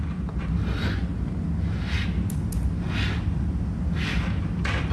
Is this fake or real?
real